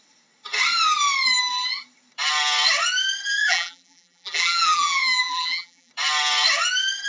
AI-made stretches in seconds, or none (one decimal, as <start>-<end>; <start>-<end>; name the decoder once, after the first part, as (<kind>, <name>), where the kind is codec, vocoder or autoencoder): 3.4-5.9 (vocoder, BigVGAN v2)